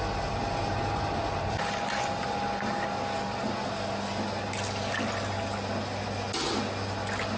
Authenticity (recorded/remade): recorded